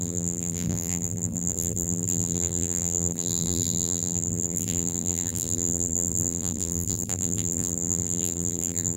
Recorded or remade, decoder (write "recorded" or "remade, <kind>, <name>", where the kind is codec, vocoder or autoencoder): remade, vocoder, BigVGAN v2